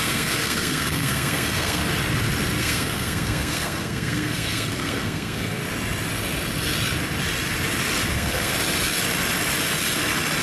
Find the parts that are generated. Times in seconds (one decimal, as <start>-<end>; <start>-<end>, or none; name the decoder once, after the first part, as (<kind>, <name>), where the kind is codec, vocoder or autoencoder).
0.0-1.8 (codec, SNAC); 2.6-5.6; 8.1-8.5